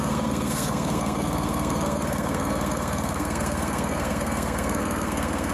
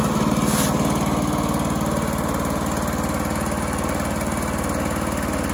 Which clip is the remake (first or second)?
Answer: first